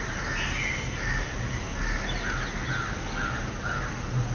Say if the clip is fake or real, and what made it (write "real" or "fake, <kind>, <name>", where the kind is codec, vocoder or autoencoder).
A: real